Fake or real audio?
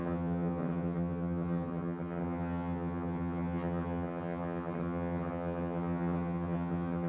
fake